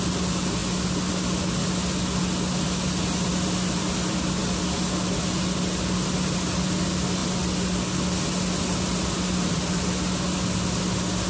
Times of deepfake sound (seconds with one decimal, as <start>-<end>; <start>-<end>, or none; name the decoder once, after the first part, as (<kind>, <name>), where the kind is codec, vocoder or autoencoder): none